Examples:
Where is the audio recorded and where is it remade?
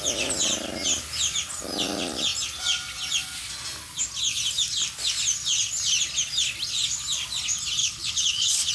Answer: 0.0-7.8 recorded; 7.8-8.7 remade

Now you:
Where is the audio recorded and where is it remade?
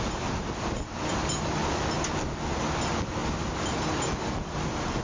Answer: 0.0-5.0 recorded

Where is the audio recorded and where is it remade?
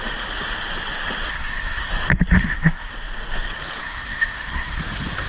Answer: 0.0-1.3 recorded; 1.3-1.9 remade; 1.9-2.4 recorded; 2.4-2.9 remade; 2.9-3.8 recorded; 3.8-4.8 remade; 4.8-5.3 recorded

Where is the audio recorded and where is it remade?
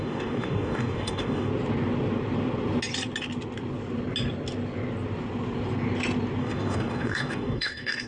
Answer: 0.0-1.5 remade; 1.5-6.4 recorded; 6.4-8.1 remade